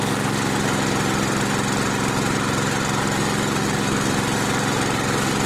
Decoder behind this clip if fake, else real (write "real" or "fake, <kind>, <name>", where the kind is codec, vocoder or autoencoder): real